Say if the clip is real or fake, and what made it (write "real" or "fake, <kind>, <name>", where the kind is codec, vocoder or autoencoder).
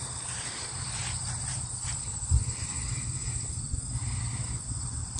real